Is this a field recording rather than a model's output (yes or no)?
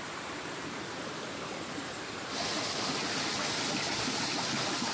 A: yes